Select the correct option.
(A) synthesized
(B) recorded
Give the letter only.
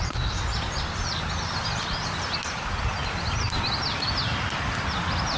B